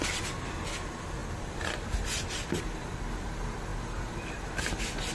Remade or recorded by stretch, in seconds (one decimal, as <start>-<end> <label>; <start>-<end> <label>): 0.0-5.1 recorded